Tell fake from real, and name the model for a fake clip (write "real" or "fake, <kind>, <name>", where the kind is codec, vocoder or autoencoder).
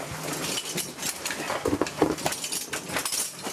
real